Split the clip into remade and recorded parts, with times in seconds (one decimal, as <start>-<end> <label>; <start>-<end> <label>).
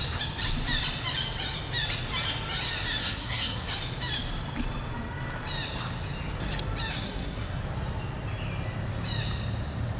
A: 0.0-3.0 recorded; 3.0-3.7 remade; 3.7-6.9 recorded; 6.9-7.6 remade; 7.6-10.0 recorded